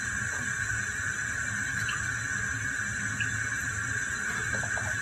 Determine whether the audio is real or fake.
real